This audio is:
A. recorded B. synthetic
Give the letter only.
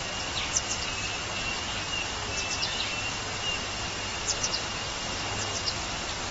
A